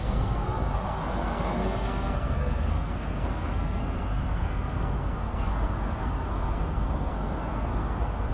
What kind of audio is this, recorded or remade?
remade